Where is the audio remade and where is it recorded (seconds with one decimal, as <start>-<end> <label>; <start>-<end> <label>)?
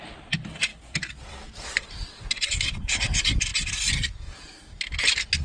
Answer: 0.0-0.7 recorded; 0.7-1.9 remade; 1.9-5.4 recorded